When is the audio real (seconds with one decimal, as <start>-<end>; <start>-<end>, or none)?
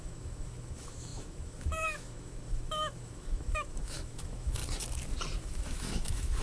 4.6-5.4